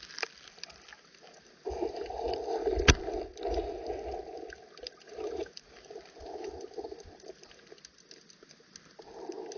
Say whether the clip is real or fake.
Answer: real